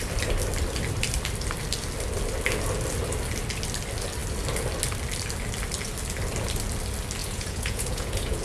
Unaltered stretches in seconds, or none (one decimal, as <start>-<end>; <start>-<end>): 0.0-7.2